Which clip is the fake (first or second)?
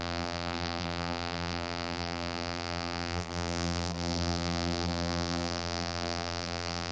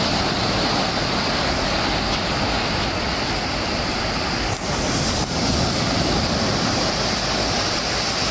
first